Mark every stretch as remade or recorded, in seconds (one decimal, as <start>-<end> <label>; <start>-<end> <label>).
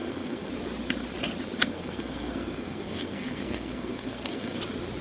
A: 0.0-0.5 remade; 0.5-1.6 recorded; 1.6-4.6 remade; 4.6-5.0 recorded